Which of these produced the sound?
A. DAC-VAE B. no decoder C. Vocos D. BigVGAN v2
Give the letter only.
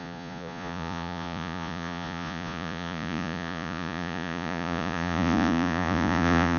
C